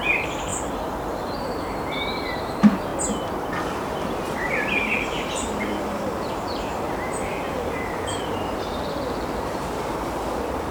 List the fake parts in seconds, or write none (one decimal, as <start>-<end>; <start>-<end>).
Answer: 0.0-0.5; 1.4-2.9; 4.5-10.7